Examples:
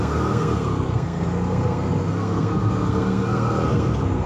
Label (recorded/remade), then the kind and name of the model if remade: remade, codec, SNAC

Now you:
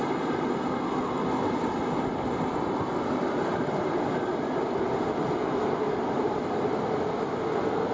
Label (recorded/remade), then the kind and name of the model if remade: recorded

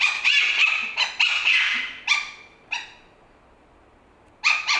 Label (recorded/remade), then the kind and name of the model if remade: recorded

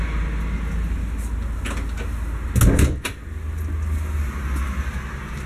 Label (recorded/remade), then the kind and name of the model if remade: recorded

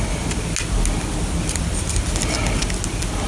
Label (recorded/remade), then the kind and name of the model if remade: recorded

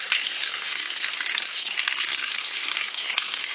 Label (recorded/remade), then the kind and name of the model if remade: remade, codec, SNAC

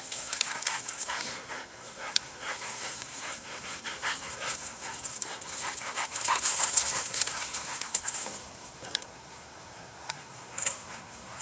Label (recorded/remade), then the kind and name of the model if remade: remade, codec, SNAC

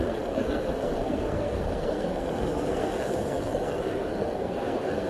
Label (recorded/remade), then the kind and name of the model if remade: remade, codec, SNAC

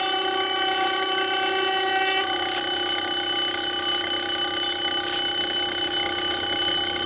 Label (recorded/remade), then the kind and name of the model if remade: recorded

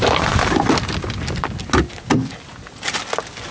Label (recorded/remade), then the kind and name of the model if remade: recorded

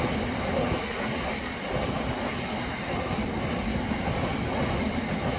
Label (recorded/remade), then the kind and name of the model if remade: recorded